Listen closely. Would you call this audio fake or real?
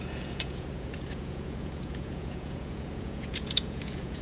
fake